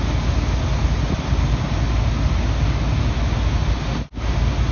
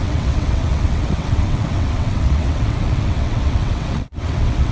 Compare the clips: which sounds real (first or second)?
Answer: first